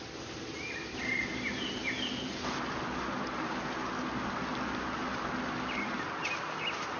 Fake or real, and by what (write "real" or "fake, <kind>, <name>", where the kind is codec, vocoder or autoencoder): real